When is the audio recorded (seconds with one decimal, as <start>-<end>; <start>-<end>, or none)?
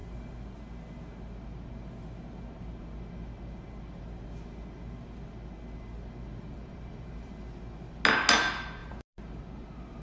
0.0-6.3; 7.3-8.8; 9.4-10.0